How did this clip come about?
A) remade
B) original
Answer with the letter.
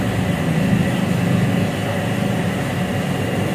B